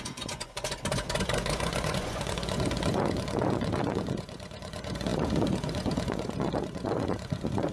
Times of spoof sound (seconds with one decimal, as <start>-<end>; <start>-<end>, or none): 0.0-7.7